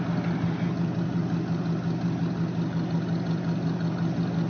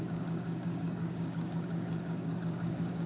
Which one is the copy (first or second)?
second